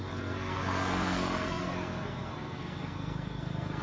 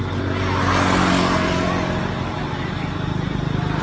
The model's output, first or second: first